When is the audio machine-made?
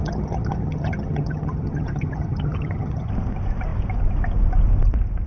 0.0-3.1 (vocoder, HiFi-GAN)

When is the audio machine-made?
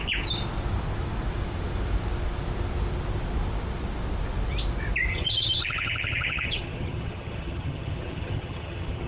5.1-9.1 (vocoder, HiFi-GAN)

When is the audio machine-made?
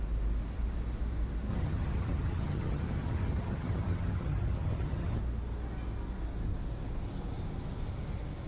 1.5-5.2 (vocoder, HiFi-GAN)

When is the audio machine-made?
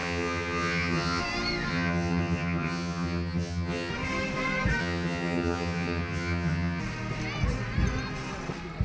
0.0-1.2 (vocoder, HiFi-GAN); 1.7-3.9; 4.8-6.8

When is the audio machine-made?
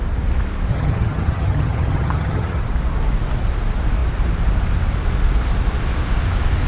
0.7-2.6 (vocoder, HiFi-GAN)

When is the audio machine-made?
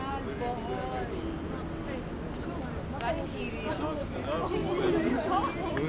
none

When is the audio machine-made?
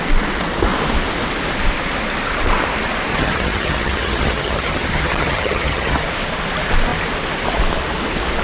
3.1-6.0 (vocoder, HiFi-GAN)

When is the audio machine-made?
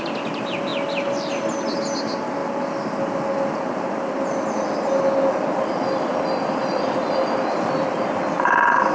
none